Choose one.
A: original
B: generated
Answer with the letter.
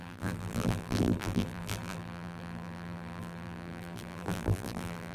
B